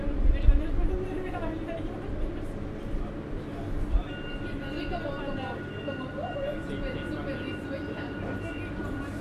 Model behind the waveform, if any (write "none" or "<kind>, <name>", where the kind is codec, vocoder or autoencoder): none